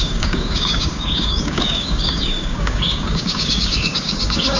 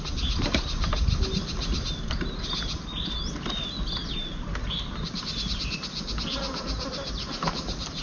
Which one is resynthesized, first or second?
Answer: first